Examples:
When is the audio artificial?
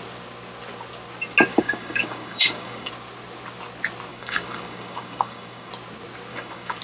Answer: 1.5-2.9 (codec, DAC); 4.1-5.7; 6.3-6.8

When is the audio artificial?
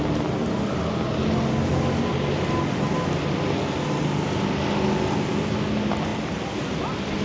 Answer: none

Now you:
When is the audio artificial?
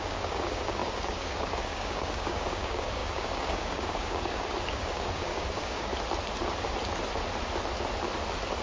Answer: 0.0-5.9 (codec, DAC)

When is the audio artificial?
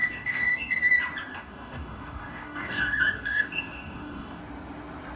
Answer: 0.0-0.8 (codec, DAC); 1.3-4.4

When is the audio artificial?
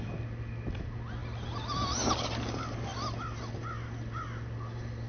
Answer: none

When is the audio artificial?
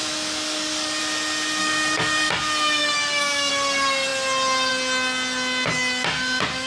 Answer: 0.0-1.0 (codec, DAC); 1.6-2.3; 2.8-3.5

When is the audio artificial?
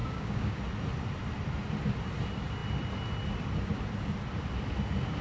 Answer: 0.0-0.6 (codec, DAC)